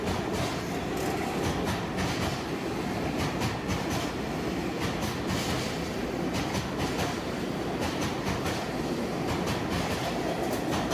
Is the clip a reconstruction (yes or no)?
no